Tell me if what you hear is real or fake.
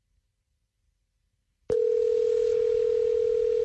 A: real